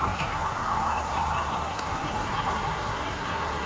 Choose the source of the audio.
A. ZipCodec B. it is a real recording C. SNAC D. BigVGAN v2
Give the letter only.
C